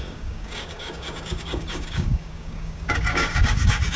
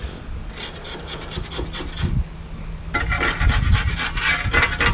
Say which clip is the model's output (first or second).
first